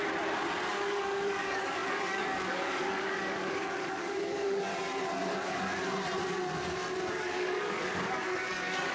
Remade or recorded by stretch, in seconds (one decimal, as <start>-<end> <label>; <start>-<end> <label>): 0.0-0.7 recorded; 0.7-4.7 remade; 4.7-7.2 recorded; 7.2-8.9 remade